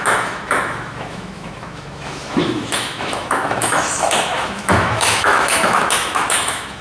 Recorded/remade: remade